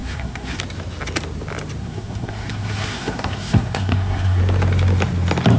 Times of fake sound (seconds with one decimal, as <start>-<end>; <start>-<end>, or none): 0.0-0.6; 1.8-4.4